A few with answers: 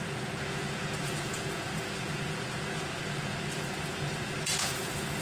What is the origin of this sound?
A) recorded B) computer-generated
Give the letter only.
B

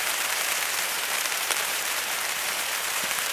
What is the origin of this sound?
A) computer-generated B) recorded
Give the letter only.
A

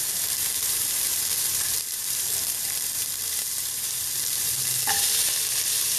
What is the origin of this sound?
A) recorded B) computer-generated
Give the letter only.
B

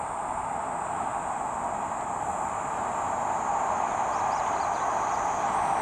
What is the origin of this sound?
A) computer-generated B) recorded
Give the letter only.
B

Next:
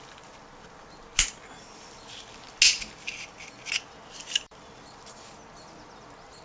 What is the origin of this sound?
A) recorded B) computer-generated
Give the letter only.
A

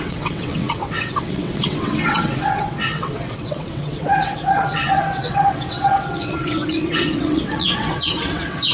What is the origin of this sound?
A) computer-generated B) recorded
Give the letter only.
A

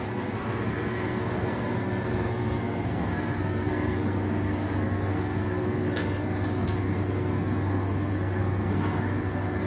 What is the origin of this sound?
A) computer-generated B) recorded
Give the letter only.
A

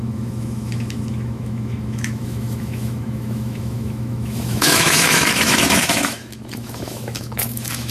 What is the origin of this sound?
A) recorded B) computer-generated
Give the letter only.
B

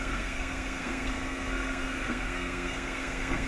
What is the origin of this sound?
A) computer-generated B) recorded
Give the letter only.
A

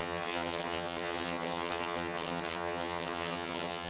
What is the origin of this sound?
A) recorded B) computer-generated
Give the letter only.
B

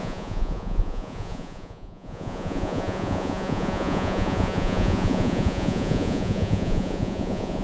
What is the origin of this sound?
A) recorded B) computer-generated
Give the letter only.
B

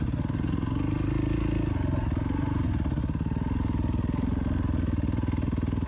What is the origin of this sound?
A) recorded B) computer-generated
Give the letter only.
A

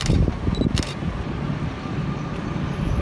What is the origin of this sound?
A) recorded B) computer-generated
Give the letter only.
A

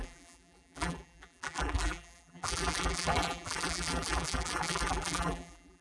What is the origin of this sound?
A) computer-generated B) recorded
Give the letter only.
A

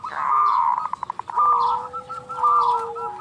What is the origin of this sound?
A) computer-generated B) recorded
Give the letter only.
B